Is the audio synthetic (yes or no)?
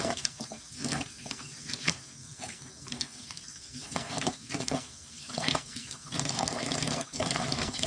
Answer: yes